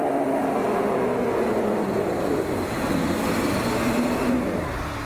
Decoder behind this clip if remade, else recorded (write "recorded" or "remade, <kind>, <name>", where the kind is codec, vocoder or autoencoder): recorded